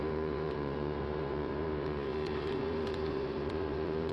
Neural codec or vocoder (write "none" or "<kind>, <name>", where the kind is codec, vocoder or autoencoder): vocoder, Vocos